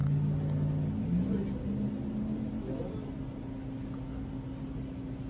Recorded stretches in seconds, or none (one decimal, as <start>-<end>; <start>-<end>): 0.0-5.3